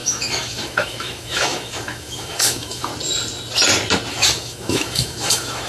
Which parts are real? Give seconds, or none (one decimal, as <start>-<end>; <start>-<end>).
2.9-4.1